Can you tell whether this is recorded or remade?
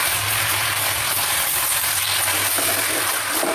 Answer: recorded